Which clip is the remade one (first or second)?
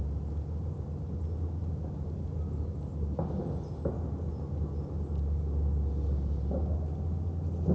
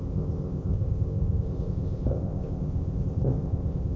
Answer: second